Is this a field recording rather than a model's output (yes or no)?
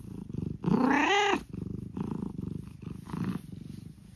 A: yes